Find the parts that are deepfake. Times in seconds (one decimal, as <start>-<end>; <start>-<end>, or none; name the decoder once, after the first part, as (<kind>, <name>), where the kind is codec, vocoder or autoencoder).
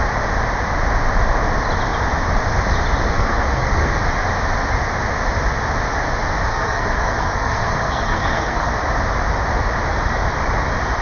3.1-4.0 (codec, SNAC); 6.5-8.7